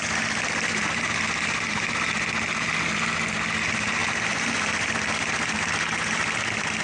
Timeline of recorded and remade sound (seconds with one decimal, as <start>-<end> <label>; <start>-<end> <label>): 0.0-6.8 recorded